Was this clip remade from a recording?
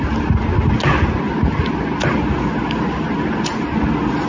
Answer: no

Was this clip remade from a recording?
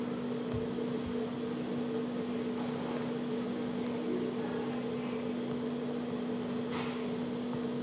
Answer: no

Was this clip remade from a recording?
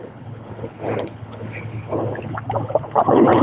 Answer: yes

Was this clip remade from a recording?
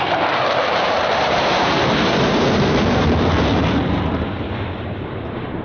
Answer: yes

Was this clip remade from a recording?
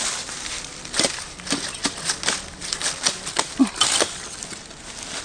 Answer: no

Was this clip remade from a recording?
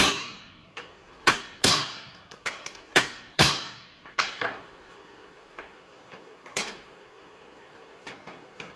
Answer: yes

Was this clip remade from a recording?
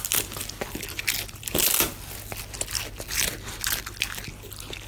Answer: no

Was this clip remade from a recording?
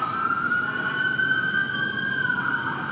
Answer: no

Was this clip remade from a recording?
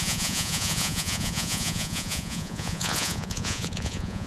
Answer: yes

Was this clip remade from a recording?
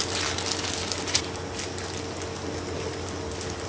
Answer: no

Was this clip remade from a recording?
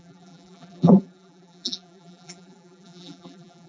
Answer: yes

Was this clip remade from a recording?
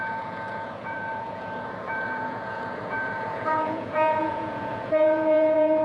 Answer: yes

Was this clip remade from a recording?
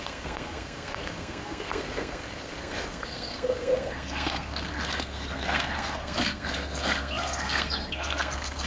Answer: yes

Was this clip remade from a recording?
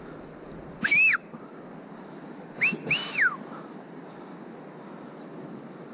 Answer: no